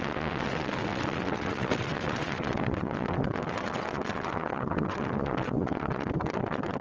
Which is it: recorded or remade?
remade